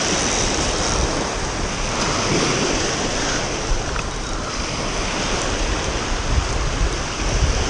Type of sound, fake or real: real